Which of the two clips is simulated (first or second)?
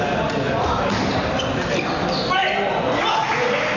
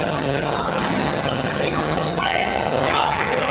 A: second